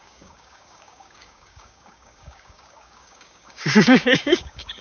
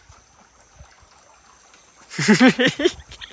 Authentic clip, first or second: second